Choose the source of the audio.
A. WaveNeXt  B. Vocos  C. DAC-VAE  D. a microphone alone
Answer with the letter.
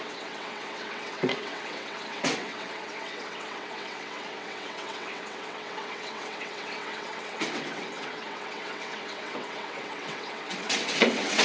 A